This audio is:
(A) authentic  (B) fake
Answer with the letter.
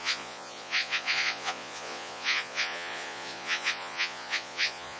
B